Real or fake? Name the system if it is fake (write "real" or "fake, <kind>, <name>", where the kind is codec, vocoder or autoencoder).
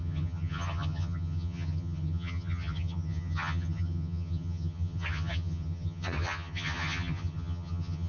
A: fake, vocoder, HiFi-GAN